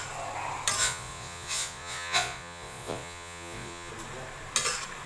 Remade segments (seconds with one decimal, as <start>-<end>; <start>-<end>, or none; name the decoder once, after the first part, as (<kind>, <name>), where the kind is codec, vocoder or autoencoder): 0.8-3.9 (vocoder, Vocos)